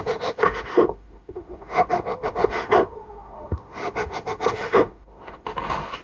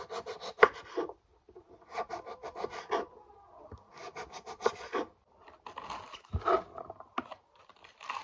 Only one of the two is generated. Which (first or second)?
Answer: first